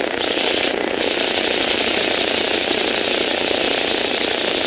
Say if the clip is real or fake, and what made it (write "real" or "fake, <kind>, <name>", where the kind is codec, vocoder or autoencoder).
fake, vocoder, BigVGAN v2